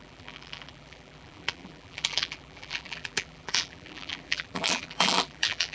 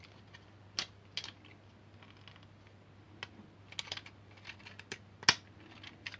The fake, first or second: first